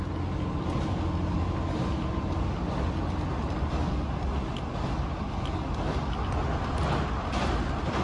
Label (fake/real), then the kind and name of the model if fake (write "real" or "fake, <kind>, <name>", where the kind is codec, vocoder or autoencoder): real